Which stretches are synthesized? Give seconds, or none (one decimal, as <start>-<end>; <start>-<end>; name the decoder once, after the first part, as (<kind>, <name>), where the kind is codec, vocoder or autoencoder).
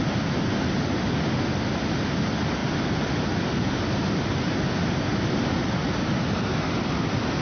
none